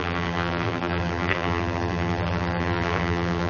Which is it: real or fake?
fake